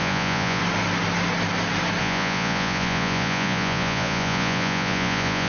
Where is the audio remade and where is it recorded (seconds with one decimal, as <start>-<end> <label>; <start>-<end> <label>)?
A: 0.0-0.6 remade; 0.6-2.0 recorded; 2.0-5.5 remade